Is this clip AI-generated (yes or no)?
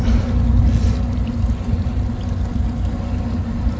no